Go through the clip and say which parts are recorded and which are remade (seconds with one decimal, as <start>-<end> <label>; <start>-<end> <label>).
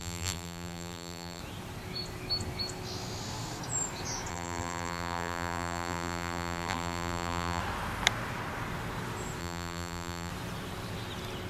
0.0-1.4 remade; 1.4-4.3 recorded; 4.3-7.6 remade; 7.6-9.4 recorded; 9.4-10.3 remade; 10.3-11.5 recorded